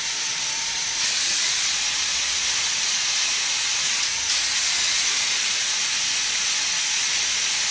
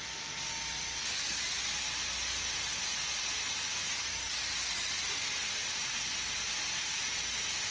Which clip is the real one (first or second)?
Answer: second